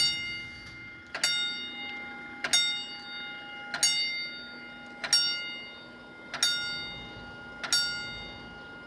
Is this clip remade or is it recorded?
recorded